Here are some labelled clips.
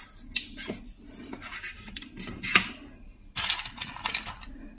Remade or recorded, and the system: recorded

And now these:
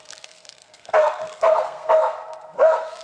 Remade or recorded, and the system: remade, codec, SNAC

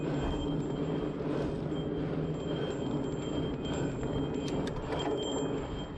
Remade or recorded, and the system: recorded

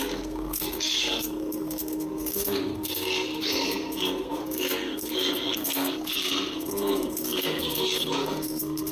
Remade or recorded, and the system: remade, codec, SNAC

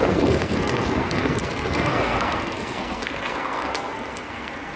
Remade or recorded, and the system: remade, codec, SNAC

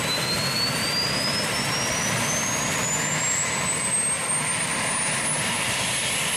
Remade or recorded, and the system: recorded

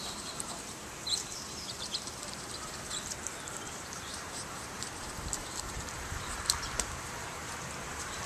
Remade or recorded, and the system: remade, vocoder, BigVGAN v2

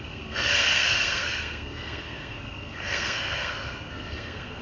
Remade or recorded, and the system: remade, codec, SNAC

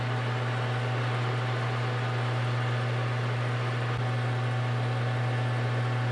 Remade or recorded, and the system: recorded